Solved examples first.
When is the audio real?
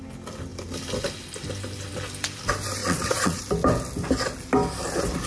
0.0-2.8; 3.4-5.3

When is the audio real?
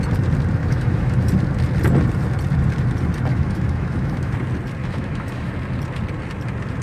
0.0-0.6; 1.3-3.3; 4.3-4.8; 5.5-6.8